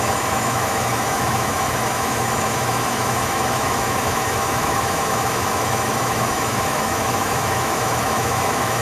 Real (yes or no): no